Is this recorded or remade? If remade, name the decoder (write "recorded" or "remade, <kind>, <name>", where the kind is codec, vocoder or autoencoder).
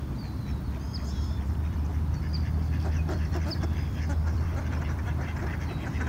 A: remade, vocoder, BigVGAN v2